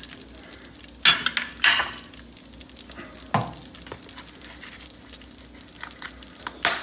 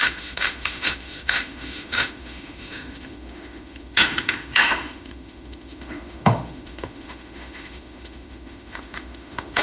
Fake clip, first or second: second